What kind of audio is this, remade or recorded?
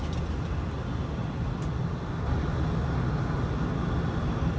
recorded